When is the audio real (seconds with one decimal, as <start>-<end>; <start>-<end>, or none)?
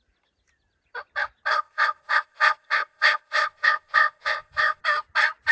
0.0-1.5; 4.8-5.5